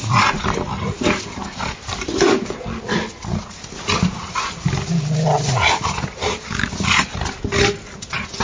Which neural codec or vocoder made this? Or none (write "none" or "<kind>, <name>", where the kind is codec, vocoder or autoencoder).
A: none